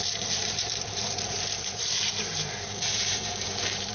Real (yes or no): no